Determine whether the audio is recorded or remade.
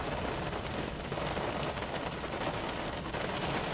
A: recorded